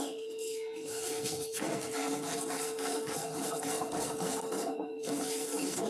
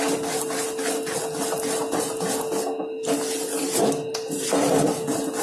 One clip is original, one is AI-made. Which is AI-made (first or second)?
first